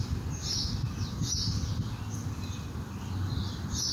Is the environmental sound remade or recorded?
recorded